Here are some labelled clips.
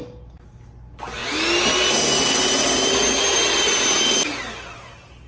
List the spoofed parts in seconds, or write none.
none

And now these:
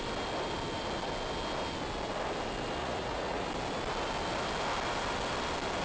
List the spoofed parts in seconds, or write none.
2.8-3.5 (vocoder, Vocos)

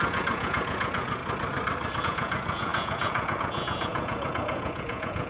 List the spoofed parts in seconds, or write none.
0.0-1.2 (vocoder, Vocos); 2.0-5.3

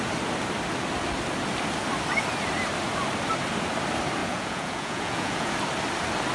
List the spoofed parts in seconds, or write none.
4.2-5.5 (vocoder, Vocos)